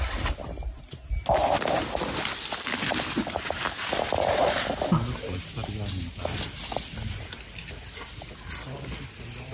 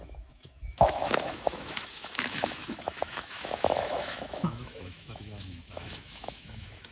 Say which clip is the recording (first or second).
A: first